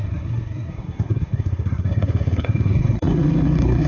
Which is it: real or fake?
fake